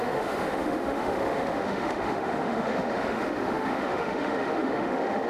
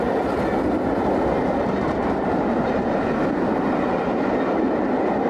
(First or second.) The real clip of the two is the second